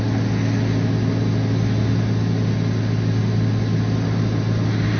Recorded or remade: recorded